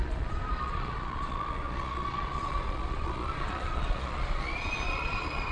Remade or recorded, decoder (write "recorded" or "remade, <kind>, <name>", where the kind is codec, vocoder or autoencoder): remade, vocoder, Vocos